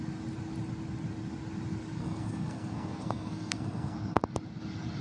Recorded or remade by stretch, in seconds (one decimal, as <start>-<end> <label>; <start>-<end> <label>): 0.0-2.0 recorded; 2.0-4.2 remade; 4.2-5.0 recorded